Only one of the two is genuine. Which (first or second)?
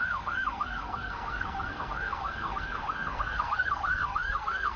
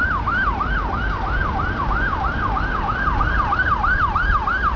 second